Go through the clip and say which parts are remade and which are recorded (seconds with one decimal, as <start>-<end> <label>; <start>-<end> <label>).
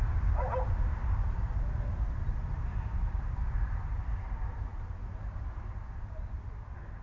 0.0-1.0 recorded; 1.0-5.2 remade; 5.2-7.0 recorded